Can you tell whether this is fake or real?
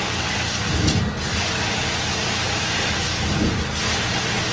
real